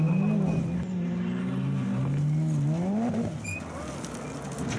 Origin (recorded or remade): recorded